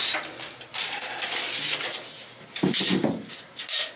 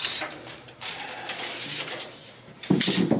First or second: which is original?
first